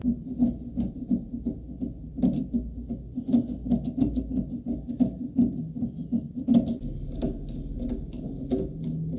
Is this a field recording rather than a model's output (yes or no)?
yes